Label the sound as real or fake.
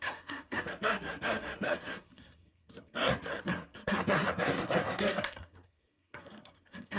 fake